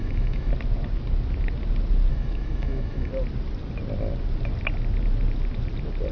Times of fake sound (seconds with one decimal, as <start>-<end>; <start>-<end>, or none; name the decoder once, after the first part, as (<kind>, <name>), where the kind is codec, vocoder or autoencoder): 0.0-0.5 (autoencoder, DAC-VAE); 2.1-3.1